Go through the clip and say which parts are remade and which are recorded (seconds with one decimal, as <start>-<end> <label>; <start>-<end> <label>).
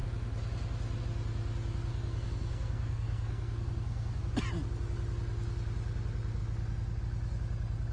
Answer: 0.0-1.9 recorded; 1.9-4.2 remade; 4.2-7.9 recorded